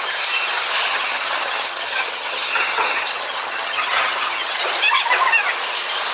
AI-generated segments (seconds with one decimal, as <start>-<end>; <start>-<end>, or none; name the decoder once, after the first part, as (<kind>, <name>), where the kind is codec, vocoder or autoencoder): 0.9-4.6 (vocoder, HiFi-GAN)